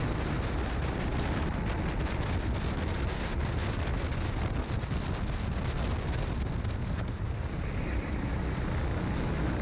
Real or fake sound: real